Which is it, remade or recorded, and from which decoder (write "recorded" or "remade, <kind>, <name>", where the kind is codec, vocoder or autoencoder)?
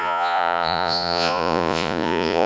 remade, vocoder, Vocos